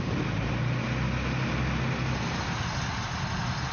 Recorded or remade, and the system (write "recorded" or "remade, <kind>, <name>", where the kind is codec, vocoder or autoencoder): recorded